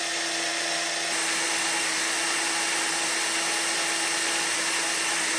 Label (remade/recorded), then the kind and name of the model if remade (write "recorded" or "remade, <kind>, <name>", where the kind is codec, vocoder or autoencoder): recorded